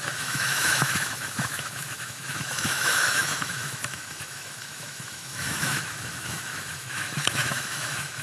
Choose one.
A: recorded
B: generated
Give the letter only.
B